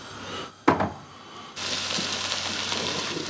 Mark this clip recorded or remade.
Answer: recorded